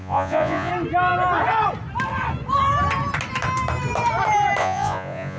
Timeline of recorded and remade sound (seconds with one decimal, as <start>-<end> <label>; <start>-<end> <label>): 0.0-0.7 remade; 0.7-4.6 recorded; 4.6-5.4 remade